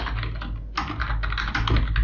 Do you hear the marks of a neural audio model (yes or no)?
no